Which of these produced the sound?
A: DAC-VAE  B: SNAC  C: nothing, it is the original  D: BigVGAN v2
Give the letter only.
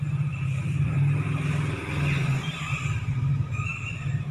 C